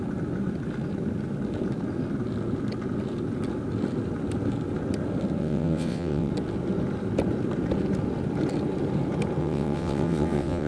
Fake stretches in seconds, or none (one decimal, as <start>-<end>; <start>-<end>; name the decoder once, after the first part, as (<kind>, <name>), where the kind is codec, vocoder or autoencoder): 5.4-6.3 (vocoder, WaveNeXt); 9.4-10.7